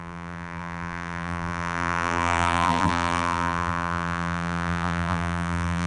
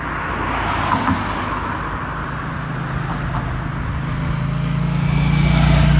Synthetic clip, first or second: first